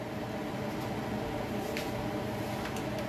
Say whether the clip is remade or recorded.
recorded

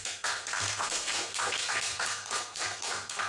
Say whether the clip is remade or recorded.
remade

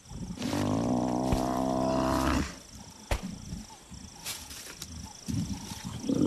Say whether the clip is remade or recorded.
recorded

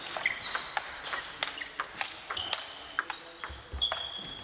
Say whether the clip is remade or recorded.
recorded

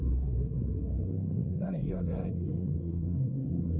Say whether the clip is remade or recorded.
remade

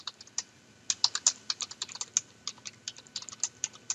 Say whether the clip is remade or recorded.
recorded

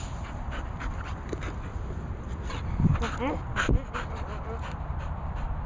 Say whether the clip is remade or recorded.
recorded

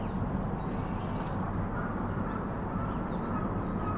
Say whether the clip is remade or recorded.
recorded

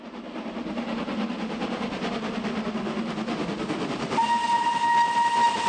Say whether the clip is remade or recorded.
recorded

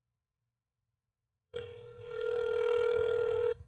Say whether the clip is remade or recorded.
remade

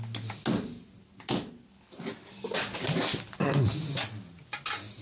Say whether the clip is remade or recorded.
recorded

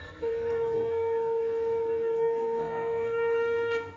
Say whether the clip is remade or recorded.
remade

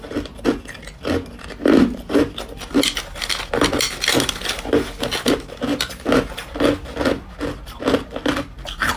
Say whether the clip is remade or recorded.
recorded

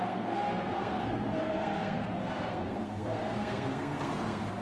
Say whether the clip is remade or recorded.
remade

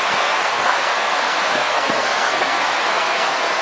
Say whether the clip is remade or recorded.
remade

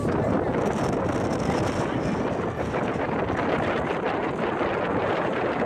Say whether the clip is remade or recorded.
recorded